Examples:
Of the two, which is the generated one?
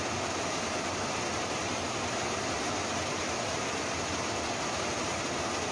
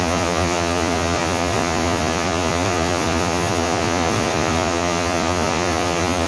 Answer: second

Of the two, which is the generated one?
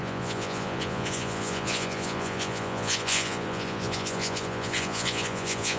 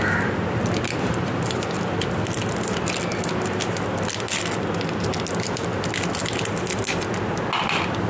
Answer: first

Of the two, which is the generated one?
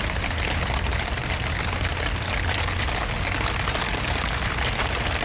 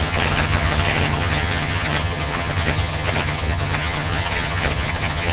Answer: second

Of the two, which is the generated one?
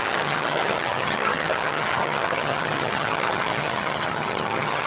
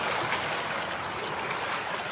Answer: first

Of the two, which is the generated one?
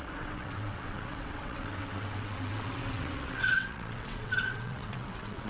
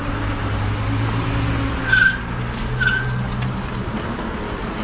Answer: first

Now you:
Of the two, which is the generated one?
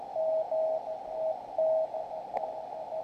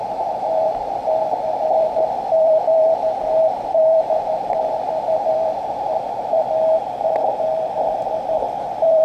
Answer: second